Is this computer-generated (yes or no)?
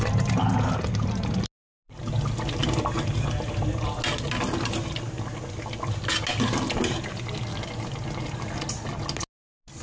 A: no